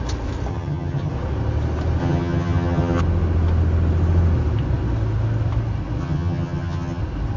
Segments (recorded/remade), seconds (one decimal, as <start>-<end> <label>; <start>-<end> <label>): 0.0-0.5 recorded; 0.5-1.1 remade; 1.1-2.0 recorded; 2.0-3.0 remade; 3.0-6.0 recorded; 6.0-7.0 remade; 7.0-7.4 recorded